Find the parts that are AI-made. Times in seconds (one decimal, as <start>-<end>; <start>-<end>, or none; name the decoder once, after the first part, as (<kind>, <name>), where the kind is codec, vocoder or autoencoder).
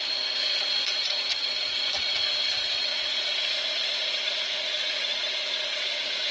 0.0-6.3 (vocoder, Vocos)